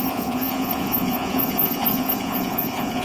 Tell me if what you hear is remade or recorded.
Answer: remade